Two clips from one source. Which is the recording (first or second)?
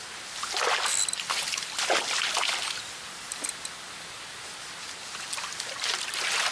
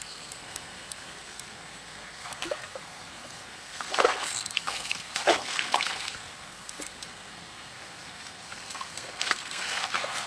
first